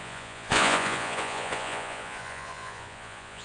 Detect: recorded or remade remade